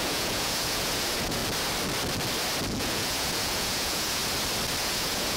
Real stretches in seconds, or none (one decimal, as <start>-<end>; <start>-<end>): 1.4-2.8; 4.2-4.8